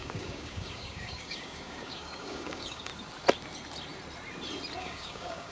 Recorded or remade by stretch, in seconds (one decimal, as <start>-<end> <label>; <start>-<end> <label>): 0.0-2.9 remade; 2.9-4.8 recorded; 4.8-5.5 remade